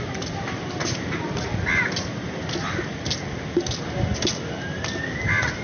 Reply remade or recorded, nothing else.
recorded